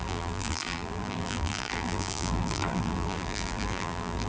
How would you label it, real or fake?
fake